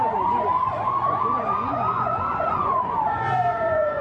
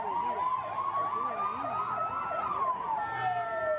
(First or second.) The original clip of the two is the second